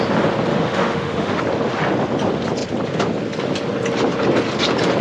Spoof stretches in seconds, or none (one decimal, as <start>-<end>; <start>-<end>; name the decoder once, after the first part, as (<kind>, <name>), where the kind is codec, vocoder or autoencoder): 0.5-1.4 (autoencoder, DAC-VAE)